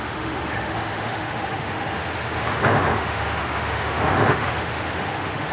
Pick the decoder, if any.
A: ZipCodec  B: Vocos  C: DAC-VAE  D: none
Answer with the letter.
C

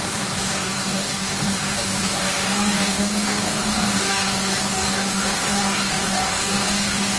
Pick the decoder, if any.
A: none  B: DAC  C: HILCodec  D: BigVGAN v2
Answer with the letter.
B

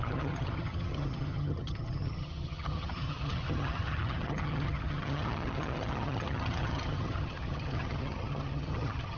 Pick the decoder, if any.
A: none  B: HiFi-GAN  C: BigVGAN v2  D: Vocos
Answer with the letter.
B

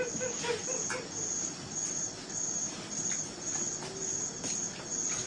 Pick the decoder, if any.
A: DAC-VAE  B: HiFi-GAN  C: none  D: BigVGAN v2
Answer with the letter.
C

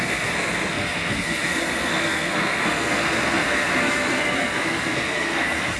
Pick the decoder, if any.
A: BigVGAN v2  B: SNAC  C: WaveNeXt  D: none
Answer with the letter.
B